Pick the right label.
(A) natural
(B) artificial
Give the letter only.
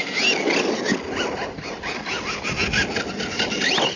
A